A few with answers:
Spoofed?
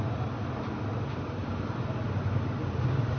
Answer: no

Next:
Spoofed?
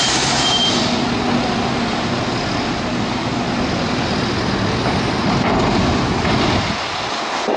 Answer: no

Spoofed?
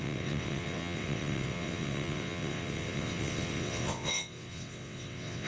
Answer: yes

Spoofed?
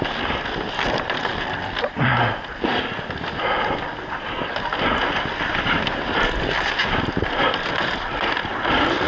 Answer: no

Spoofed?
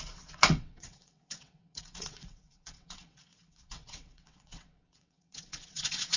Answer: yes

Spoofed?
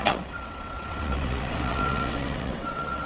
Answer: yes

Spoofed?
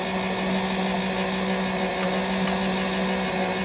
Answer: no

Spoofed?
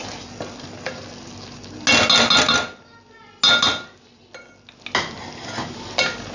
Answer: no